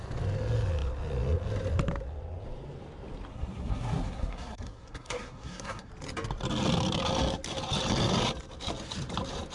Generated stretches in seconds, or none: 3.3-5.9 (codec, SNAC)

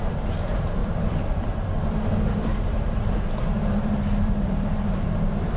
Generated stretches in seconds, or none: 0.0-0.8 (vocoder, BigVGAN v2); 2.3-5.6

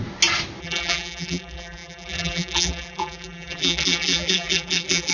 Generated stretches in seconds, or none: 0.6-5.1 (vocoder, BigVGAN v2)

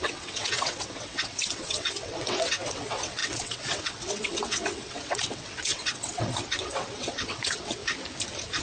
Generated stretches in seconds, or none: 0.0-7.8 (vocoder, WaveNeXt)

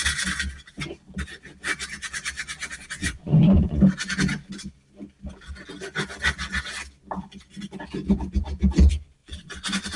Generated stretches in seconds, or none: 3.0-3.8 (vocoder, Vocos); 9.2-10.0

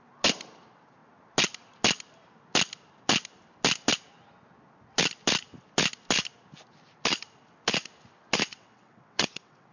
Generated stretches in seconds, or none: 8.5-9.7 (vocoder, WaveNeXt)

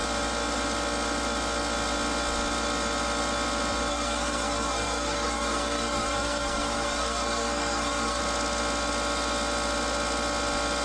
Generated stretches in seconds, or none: 3.9-8.2 (codec, SNAC)